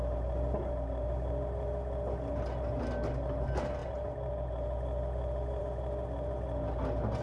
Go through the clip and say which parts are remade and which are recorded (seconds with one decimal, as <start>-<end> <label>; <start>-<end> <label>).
0.0-7.2 recorded